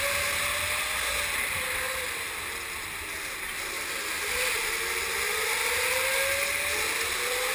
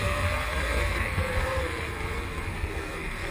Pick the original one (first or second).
first